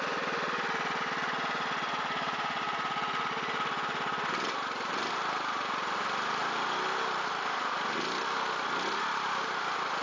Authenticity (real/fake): real